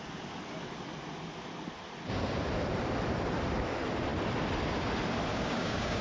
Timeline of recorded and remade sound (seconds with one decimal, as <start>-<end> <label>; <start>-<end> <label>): 0.0-5.3 recorded; 5.3-6.0 remade